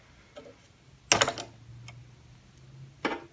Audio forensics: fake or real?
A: real